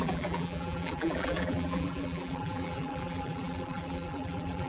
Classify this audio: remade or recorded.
remade